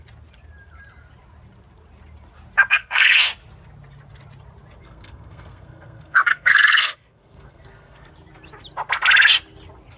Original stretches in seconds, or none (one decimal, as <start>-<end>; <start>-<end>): 0.0-2.7; 3.3-4.8; 8.1-10.0